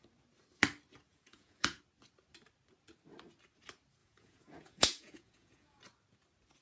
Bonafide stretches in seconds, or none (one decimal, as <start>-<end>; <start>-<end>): 0.0-1.1; 1.8-4.0; 5.8-6.6